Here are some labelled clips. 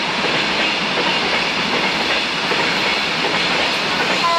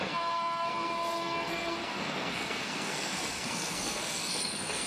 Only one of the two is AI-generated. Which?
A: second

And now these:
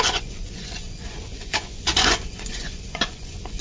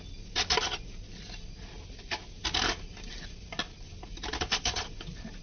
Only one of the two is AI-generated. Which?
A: first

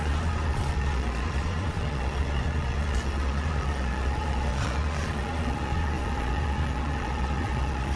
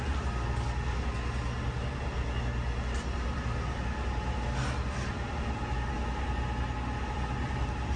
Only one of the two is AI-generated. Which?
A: first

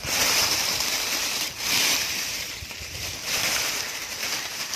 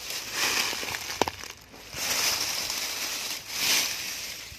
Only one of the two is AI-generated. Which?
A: first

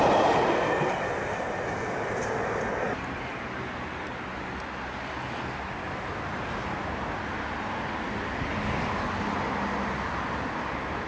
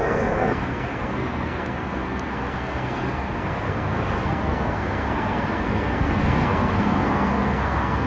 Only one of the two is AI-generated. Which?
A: second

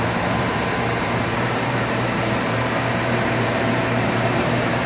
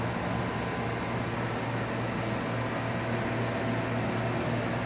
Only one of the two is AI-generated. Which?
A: first